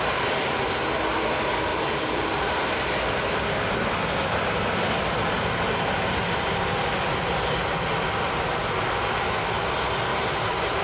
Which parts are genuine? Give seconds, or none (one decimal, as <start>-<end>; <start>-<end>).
0.0-1.7; 3.1-10.1